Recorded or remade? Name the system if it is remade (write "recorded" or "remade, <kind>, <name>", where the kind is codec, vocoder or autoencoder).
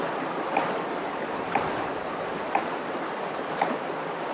recorded